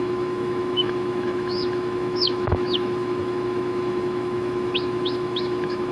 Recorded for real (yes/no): no